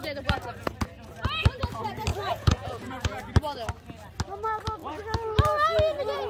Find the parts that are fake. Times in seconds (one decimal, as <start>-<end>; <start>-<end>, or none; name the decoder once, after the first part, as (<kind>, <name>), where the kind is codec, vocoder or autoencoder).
2.1-3.2 (vocoder, Vocos)